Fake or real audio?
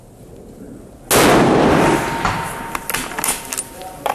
real